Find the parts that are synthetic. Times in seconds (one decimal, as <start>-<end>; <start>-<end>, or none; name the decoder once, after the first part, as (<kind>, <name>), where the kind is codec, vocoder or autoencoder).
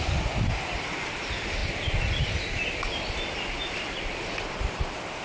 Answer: none